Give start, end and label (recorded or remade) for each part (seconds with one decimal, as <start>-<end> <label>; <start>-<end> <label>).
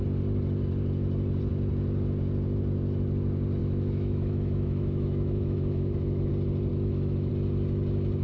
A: 0.0-3.6 recorded; 3.6-6.3 remade; 6.3-6.7 recorded; 6.7-7.3 remade; 7.3-8.2 recorded